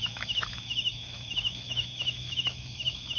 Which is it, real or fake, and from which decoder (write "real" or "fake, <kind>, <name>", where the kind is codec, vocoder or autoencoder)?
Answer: fake, autoencoder, DAC-VAE